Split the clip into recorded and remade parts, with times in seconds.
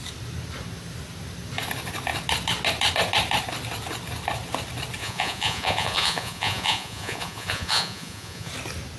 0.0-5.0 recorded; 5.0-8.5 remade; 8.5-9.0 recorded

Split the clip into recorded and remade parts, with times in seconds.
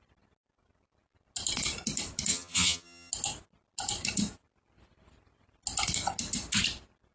0.0-2.3 recorded; 2.3-3.1 remade; 3.1-7.1 recorded